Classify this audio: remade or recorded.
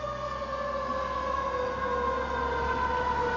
recorded